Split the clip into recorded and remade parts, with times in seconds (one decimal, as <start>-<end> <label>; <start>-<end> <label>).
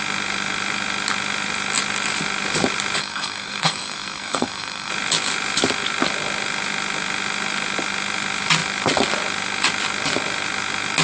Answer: 0.0-3.0 recorded; 3.0-4.9 remade; 4.9-11.0 recorded